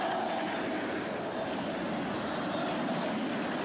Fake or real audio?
real